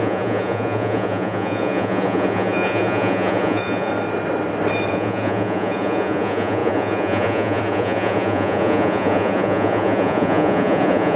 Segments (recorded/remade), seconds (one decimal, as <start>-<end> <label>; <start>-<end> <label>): 0.0-3.9 remade; 3.9-4.9 recorded; 4.9-11.2 remade